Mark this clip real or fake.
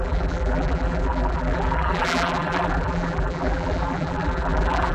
fake